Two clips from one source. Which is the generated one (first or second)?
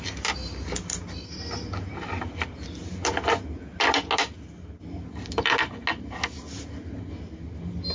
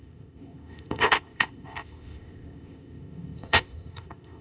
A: second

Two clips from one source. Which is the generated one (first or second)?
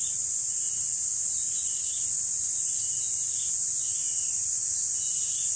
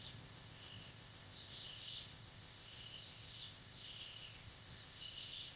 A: second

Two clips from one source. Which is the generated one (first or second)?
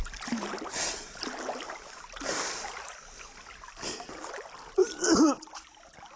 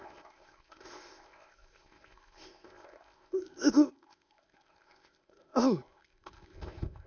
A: second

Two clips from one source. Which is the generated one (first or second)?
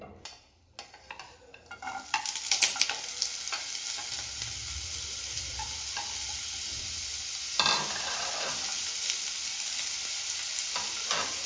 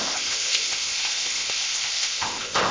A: second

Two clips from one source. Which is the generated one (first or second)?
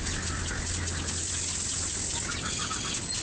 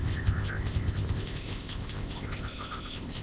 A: second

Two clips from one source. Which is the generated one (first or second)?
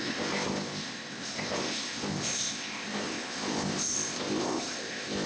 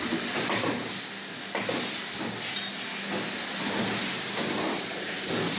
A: first